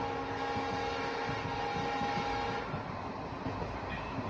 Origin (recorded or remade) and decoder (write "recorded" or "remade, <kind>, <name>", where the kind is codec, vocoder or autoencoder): recorded